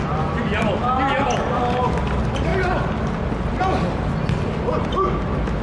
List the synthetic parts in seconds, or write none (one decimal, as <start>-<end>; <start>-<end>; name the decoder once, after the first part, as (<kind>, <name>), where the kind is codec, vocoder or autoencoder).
none